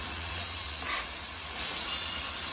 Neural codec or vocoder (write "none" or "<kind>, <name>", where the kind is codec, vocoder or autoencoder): vocoder, Vocos